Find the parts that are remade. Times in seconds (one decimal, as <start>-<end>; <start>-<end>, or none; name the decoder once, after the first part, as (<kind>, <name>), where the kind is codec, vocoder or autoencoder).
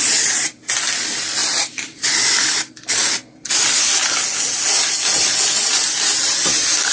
0.0-3.0 (vocoder, BigVGAN v2); 5.7-6.9